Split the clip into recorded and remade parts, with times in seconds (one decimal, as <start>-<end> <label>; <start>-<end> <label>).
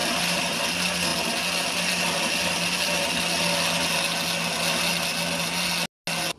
0.0-0.6 remade; 0.6-6.4 recorded